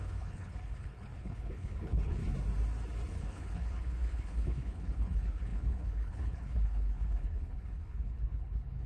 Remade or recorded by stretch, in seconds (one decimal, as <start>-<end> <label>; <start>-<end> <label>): 0.0-2.2 remade; 2.2-3.1 recorded; 3.1-8.9 remade